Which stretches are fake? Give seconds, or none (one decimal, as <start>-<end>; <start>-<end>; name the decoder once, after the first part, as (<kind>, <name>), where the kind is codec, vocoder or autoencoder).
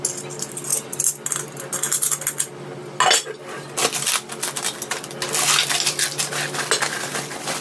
none